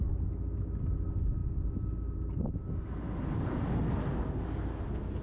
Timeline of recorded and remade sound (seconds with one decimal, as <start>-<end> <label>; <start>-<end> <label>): 0.0-5.2 recorded